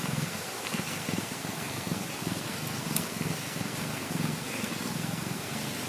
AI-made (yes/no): yes